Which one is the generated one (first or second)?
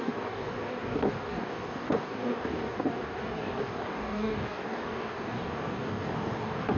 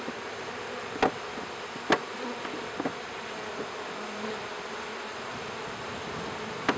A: first